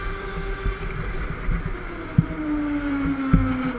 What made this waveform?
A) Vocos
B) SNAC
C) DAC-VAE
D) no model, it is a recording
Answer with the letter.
D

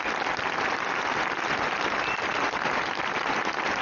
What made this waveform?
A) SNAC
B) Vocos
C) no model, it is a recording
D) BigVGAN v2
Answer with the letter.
C